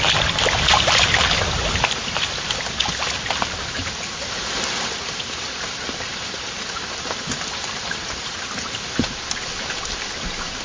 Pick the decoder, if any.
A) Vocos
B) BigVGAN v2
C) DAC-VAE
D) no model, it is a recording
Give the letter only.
B